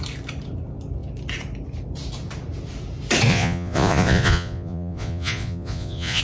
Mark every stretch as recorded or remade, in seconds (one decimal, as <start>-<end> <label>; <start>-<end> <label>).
0.0-3.3 recorded; 3.3-6.2 remade